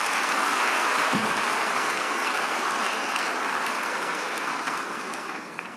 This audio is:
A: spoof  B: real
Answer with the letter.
A